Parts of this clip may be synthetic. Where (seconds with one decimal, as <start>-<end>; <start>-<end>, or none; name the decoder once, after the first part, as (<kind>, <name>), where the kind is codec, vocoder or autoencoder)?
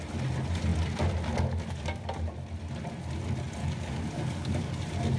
3.6-4.8 (codec, DAC)